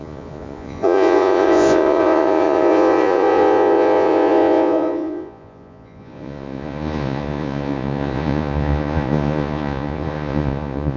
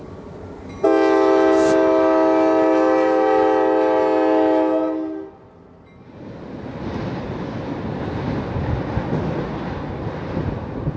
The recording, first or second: second